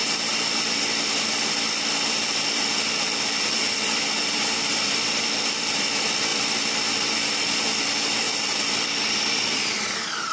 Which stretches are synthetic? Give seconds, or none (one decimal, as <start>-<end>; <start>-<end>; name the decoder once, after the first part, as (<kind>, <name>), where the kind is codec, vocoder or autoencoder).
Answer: 3.4-6.3 (vocoder, BigVGAN v2); 9.1-10.3